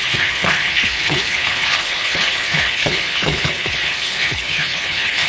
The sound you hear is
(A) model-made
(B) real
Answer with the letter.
A